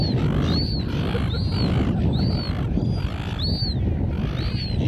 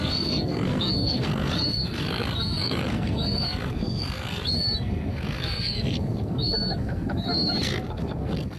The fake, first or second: second